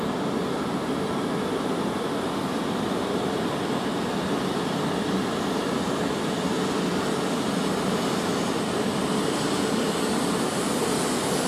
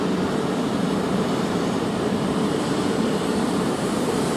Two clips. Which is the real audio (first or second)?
first